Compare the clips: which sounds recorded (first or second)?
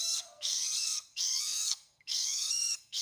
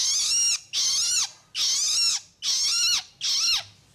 second